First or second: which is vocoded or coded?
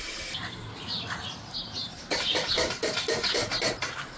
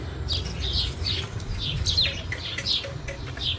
first